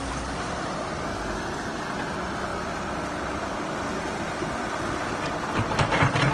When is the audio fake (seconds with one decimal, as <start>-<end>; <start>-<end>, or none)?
none